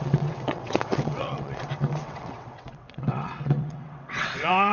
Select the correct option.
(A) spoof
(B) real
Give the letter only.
A